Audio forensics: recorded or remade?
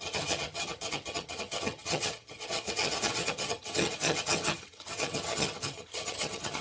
remade